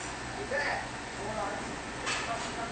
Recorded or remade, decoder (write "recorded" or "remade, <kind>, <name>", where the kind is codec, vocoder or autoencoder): remade, vocoder, Vocos